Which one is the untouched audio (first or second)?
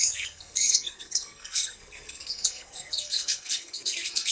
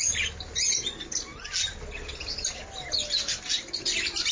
second